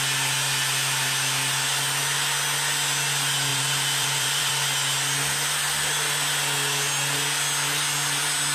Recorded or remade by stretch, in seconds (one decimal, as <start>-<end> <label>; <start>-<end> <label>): 0.0-3.5 recorded; 3.5-4.5 remade; 4.5-8.5 recorded